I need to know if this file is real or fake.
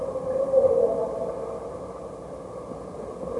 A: real